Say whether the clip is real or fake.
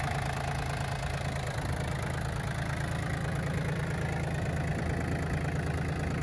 real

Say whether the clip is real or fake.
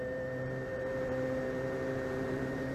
fake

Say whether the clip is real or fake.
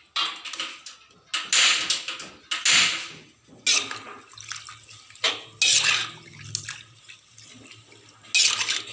real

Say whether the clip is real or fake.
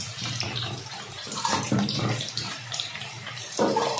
fake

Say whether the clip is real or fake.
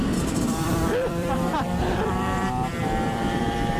fake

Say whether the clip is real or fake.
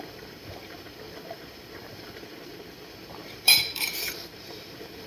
fake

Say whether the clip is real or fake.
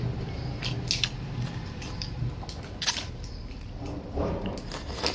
real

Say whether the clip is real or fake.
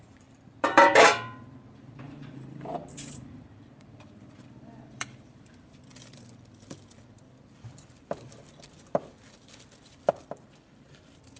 fake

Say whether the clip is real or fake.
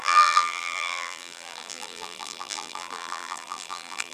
fake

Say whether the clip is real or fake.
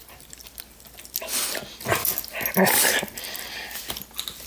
real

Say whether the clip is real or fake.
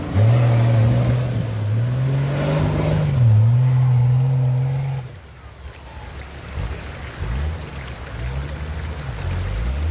real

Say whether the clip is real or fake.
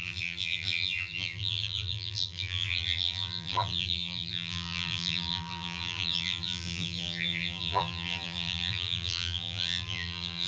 fake